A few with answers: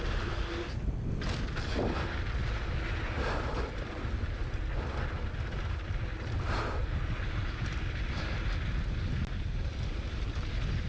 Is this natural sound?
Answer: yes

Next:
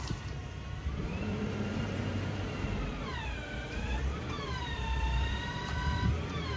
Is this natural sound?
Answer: no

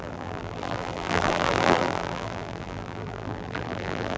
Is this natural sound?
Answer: no